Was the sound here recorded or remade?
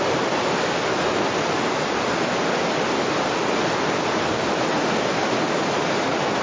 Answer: recorded